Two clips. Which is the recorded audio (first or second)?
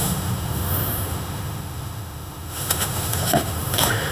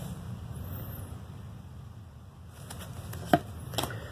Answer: second